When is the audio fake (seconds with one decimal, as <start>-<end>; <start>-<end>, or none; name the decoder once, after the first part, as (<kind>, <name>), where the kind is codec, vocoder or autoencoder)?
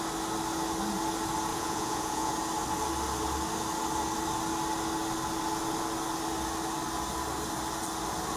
1.5-2.3 (vocoder, Vocos)